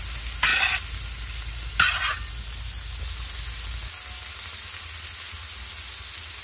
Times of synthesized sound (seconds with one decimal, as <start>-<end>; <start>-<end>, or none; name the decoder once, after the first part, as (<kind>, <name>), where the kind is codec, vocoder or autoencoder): none